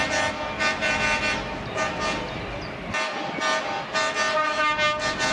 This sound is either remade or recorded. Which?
recorded